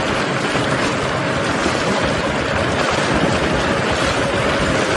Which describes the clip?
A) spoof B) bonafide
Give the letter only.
B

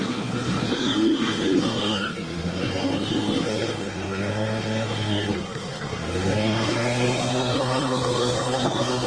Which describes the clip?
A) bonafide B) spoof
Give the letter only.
B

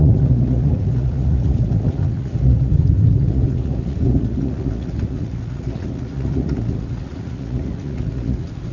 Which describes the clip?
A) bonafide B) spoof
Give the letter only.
B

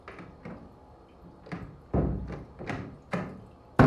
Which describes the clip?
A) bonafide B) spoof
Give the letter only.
A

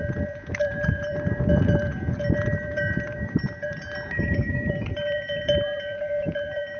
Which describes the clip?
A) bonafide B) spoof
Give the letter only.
B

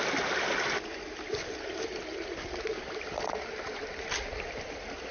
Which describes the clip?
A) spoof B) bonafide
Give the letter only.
B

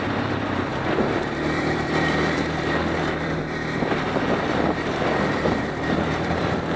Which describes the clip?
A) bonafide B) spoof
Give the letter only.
B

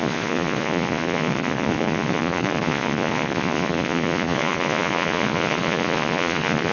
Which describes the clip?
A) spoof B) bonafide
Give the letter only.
A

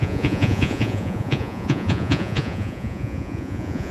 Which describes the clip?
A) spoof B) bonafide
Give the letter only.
A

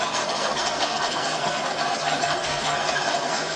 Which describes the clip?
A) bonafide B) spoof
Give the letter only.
B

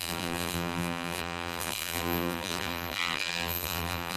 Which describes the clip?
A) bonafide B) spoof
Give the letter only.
B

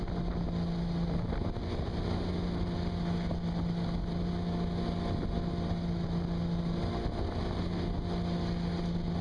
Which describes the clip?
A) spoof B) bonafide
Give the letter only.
B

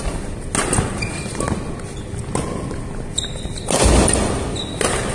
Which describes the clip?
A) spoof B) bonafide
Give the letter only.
B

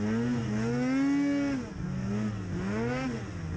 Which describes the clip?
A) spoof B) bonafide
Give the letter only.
B